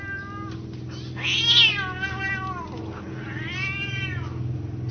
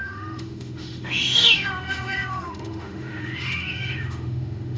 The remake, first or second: second